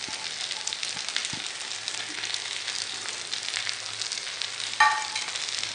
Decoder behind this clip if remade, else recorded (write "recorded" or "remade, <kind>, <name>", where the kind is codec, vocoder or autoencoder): recorded